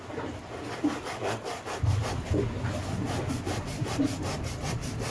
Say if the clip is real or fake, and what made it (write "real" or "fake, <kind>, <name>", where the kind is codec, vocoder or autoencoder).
real